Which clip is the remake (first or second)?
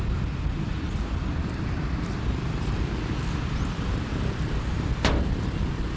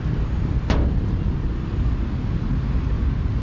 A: first